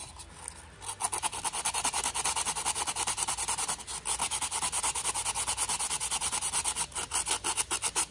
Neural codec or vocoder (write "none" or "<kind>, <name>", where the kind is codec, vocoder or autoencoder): none